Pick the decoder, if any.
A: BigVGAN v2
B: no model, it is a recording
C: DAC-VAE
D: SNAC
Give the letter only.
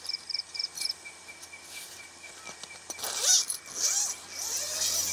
B